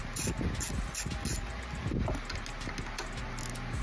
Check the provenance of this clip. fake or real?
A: real